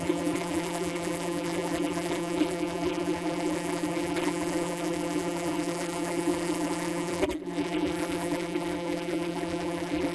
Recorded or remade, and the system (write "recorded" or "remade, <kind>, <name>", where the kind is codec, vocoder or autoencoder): remade, vocoder, BigVGAN v2